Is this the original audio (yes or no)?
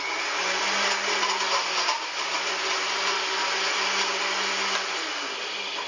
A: yes